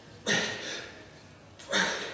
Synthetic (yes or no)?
no